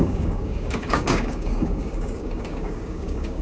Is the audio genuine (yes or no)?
no